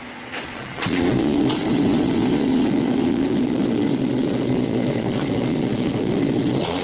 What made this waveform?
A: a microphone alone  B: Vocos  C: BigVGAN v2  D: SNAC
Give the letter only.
B